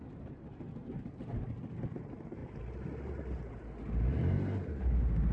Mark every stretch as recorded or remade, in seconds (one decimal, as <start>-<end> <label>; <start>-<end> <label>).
0.0-5.3 recorded